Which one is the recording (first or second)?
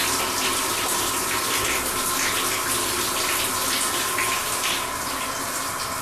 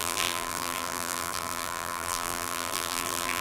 first